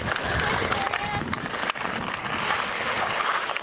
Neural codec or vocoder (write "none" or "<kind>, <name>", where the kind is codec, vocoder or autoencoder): none